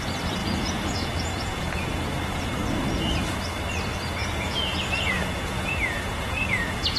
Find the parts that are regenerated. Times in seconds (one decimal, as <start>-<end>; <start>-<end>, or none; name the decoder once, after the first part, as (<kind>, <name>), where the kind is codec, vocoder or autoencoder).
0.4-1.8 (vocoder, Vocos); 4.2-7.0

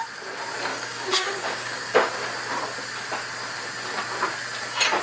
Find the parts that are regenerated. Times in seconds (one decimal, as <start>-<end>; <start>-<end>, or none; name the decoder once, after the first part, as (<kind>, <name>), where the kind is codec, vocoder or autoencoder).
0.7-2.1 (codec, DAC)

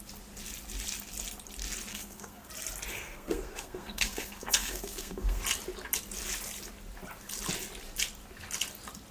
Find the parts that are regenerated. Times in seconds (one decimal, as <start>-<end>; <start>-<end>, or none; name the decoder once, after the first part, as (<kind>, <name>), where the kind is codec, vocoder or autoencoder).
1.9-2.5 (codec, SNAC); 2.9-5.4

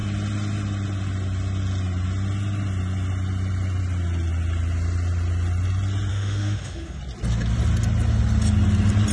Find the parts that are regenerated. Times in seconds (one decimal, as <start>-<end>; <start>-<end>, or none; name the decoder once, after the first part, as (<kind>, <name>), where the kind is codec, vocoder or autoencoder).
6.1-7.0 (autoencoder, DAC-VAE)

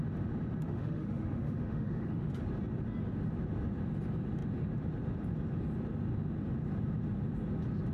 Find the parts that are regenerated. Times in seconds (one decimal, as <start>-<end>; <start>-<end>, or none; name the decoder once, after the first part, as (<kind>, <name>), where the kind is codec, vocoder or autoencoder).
0.6-2.3 (autoencoder, DAC-VAE)